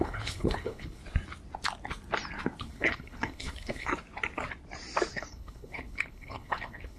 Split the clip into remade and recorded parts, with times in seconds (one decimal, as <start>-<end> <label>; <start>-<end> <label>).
0.0-1.0 remade; 1.0-2.6 recorded; 2.6-3.9 remade; 3.9-5.1 recorded; 5.1-7.0 remade